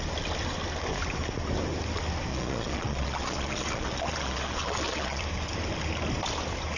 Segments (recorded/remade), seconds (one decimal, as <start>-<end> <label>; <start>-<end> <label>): 0.0-2.3 recorded; 2.3-5.2 remade; 5.2-6.8 recorded